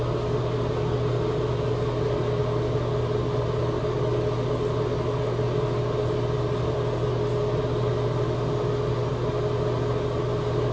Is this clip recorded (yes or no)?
yes